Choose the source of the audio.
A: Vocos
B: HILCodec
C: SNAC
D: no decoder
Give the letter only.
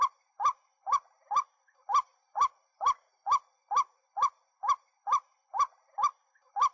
D